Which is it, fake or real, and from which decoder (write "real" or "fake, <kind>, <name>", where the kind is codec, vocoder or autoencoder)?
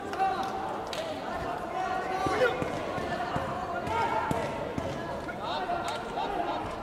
real